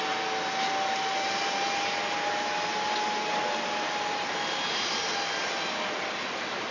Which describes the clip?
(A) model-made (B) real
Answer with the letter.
B